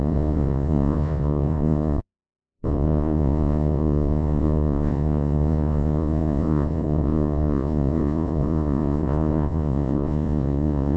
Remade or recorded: remade